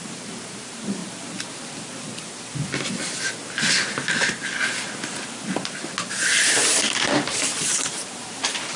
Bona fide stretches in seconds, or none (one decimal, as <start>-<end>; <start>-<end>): 1.0-6.1

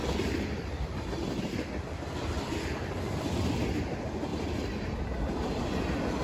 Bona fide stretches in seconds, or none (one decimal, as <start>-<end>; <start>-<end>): 3.4-4.3; 5.0-6.2

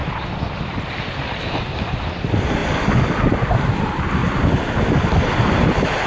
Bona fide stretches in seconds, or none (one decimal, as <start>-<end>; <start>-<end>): 0.0-2.6; 3.8-4.2; 4.8-6.1

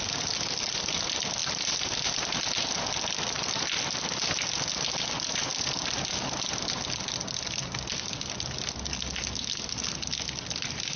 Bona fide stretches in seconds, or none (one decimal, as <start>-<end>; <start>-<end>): 0.0-11.0

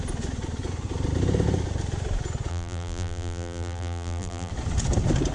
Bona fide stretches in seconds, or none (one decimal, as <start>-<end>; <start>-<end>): 0.0-2.5; 4.5-5.3

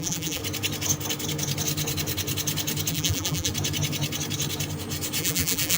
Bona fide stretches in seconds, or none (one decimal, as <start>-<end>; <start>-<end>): 0.4-2.9; 3.5-5.2